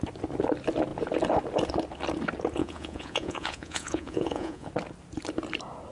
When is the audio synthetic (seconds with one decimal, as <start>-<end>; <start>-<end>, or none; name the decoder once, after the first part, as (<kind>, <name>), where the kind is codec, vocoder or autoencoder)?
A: 2.6-4.7 (vocoder, Vocos)